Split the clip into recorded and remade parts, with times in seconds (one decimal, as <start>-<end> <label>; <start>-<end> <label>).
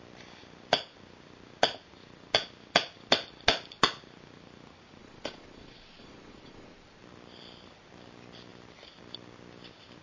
0.0-5.0 recorded; 5.0-7.0 remade; 7.0-10.0 recorded